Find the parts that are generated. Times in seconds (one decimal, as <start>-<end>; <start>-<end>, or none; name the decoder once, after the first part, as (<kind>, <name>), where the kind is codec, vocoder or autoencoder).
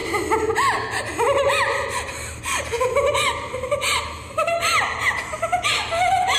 none